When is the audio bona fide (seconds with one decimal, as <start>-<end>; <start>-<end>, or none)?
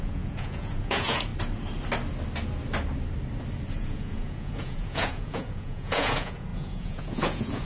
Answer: 1.3-3.7